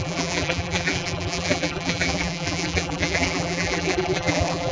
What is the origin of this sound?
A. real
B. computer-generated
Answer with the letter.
B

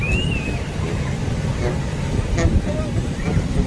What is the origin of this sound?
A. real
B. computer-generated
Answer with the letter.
A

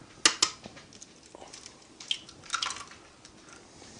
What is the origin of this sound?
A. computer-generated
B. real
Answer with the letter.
B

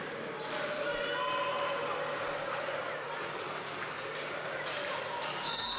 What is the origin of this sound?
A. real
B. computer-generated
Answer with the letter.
A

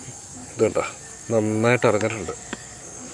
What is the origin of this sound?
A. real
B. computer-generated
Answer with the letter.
B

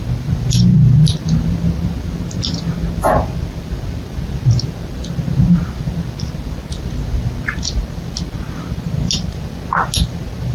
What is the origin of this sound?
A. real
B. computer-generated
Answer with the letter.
A